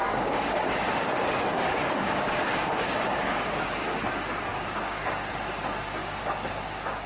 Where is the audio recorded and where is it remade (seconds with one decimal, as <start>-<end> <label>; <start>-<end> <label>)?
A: 0.0-4.0 remade; 4.0-4.5 recorded; 4.5-5.3 remade; 5.3-6.0 recorded; 6.0-7.1 remade